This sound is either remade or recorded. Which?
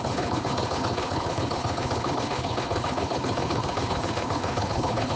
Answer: remade